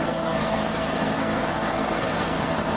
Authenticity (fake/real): fake